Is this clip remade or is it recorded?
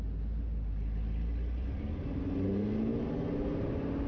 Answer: recorded